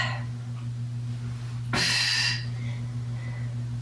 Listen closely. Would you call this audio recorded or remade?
recorded